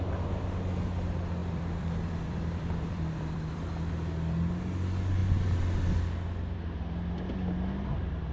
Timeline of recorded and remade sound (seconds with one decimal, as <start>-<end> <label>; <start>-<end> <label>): 0.0-1.4 recorded; 1.4-3.7 remade; 3.7-8.3 recorded